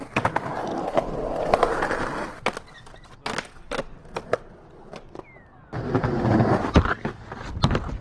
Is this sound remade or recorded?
recorded